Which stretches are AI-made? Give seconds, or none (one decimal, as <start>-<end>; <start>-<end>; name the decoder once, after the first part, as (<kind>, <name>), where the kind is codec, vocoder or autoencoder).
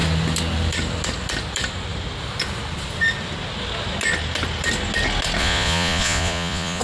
5.4-6.8 (vocoder, Vocos)